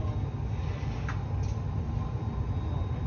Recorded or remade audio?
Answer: recorded